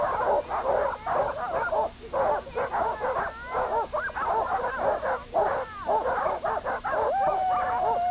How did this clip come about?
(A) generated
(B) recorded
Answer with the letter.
B